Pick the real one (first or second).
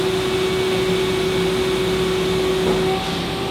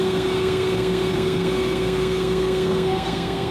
first